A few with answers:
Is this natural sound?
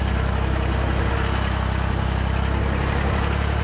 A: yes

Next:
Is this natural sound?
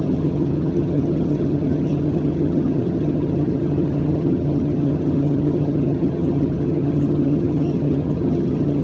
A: no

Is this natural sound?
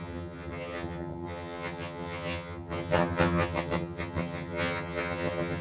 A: no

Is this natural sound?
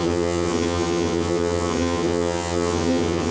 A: no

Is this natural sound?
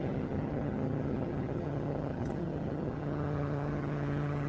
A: no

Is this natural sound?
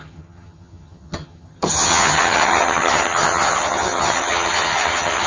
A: no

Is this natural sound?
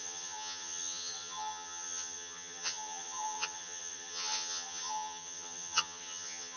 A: no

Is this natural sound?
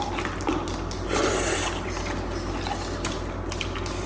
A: yes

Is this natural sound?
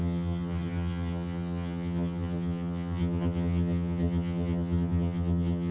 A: no